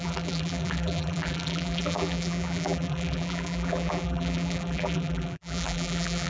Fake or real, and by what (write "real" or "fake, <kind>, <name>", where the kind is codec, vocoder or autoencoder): fake, vocoder, BigVGAN v2